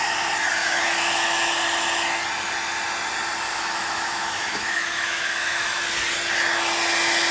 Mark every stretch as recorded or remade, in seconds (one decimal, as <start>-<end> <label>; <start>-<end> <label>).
0.0-0.6 recorded; 0.6-1.5 remade; 1.5-3.5 recorded; 3.5-5.8 remade; 5.8-7.3 recorded